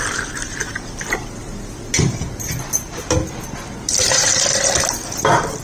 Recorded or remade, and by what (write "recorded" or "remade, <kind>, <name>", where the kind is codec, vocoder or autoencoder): remade, vocoder, BigVGAN v2